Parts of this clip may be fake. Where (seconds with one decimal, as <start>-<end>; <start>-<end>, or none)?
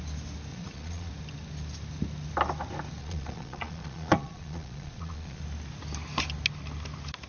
0.5-1.1; 3.0-5.4